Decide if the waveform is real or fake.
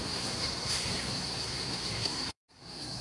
fake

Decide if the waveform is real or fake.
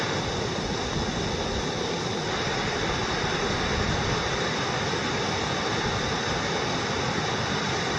real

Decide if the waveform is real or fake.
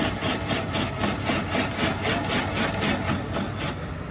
real